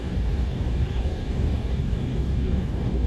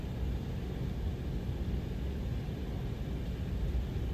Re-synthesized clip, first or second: first